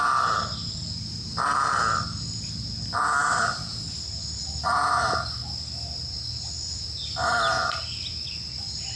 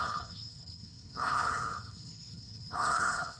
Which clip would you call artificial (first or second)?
second